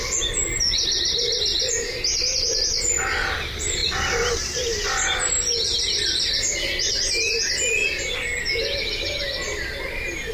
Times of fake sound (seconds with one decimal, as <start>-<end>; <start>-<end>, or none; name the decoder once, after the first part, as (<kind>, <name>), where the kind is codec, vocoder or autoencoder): none